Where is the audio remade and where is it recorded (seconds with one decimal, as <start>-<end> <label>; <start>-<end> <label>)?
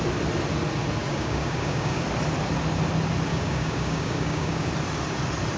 0.0-1.0 recorded; 1.0-2.0 remade; 2.0-3.3 recorded; 3.3-4.7 remade; 4.7-5.6 recorded